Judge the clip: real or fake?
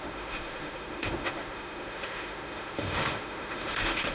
fake